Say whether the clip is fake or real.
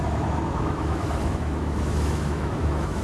fake